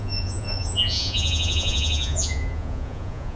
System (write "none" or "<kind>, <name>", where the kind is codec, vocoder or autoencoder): vocoder, Vocos